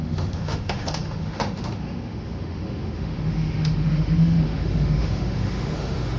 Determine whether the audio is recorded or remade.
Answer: remade